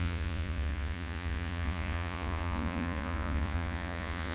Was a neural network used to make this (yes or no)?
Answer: yes